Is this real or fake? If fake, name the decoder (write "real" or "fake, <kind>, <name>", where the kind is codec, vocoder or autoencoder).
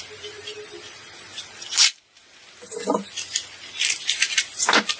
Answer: fake, vocoder, BigVGAN v2